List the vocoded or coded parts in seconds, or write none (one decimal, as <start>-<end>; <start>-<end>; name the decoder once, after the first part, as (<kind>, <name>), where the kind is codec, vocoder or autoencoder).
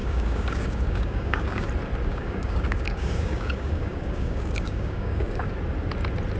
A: 0.0-1.7 (codec, DAC); 2.1-5.5